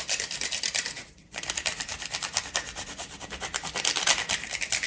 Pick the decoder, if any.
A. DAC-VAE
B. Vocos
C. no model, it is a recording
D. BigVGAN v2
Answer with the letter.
D